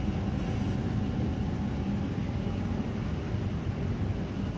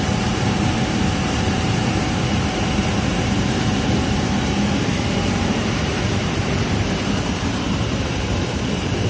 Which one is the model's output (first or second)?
second